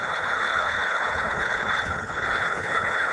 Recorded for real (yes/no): no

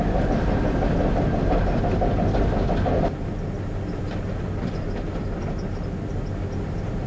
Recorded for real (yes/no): yes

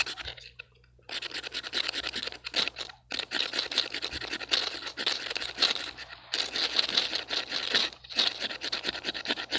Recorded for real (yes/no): yes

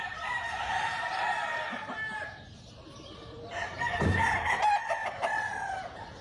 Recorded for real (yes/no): yes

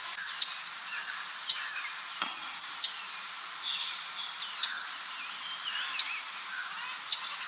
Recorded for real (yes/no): yes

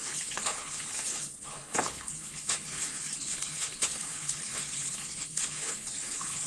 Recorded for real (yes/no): no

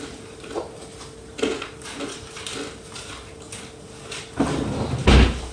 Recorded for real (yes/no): yes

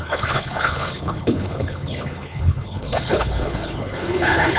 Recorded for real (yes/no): no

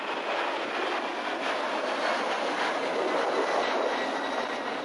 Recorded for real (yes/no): yes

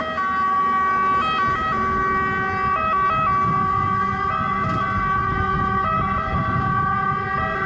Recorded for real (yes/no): yes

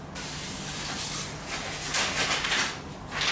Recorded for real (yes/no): yes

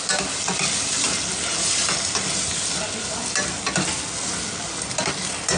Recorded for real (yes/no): yes